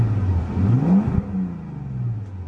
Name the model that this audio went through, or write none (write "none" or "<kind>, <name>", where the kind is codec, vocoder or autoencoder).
none